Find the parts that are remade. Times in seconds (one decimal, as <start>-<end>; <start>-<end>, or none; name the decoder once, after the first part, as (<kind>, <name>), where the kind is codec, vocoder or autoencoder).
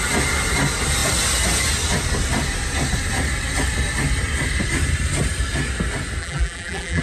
6.2-7.0 (vocoder, BigVGAN v2)